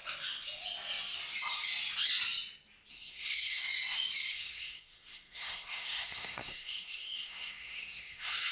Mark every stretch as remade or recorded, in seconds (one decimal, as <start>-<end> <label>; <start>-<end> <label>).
0.0-2.9 recorded; 2.9-3.6 remade; 3.6-4.3 recorded; 4.3-8.5 remade